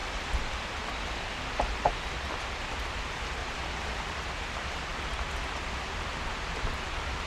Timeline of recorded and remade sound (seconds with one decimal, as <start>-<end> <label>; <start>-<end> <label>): 0.0-3.4 recorded; 3.4-4.1 remade; 4.1-7.3 recorded